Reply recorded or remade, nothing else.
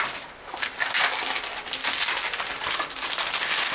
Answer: recorded